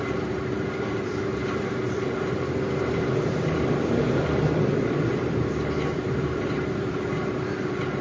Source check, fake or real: fake